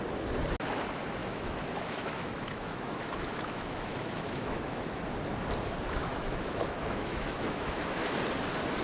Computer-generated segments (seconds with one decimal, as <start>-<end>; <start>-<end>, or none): 1.2-5.0; 6.0-8.2